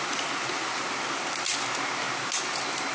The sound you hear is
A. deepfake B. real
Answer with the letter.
B